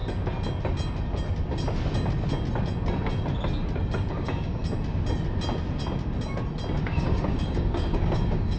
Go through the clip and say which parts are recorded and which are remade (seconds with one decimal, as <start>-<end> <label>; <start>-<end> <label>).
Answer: 0.0-4.1 recorded; 4.1-4.6 remade; 4.6-6.8 recorded; 6.8-8.6 remade